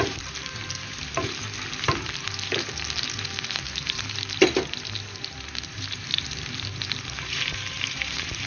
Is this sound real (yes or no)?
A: no